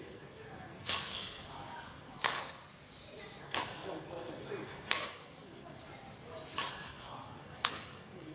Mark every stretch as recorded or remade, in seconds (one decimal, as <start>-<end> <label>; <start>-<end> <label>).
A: 0.0-2.6 remade; 2.6-3.4 recorded; 3.4-5.8 remade; 5.8-6.7 recorded; 6.7-8.3 remade